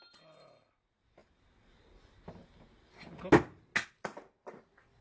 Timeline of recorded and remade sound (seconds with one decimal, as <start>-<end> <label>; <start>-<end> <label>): 0.0-5.0 recorded